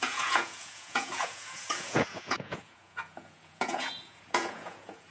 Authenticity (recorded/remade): remade